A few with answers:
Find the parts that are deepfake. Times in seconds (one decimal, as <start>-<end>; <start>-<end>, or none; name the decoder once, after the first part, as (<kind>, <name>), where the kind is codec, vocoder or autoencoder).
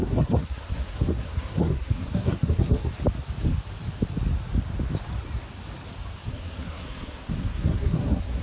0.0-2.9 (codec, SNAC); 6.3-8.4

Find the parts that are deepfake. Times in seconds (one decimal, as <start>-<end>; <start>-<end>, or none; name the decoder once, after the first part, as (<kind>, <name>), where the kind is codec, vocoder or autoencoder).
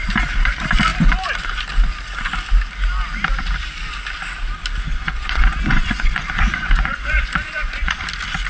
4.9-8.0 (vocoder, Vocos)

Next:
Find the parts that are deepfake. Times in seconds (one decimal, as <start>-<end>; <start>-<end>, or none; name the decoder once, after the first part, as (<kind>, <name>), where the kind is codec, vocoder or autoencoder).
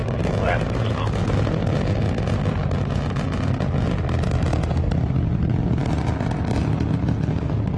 none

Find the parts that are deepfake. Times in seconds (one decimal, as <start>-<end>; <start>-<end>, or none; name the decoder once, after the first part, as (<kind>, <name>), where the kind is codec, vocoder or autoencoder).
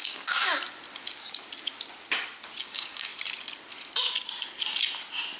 0.0-0.5 (codec, DAC); 2.6-3.1